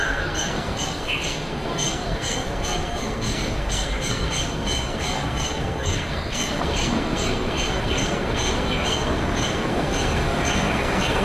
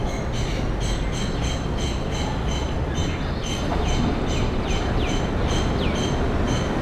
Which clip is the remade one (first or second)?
first